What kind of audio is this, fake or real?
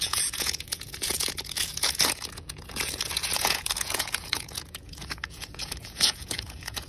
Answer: fake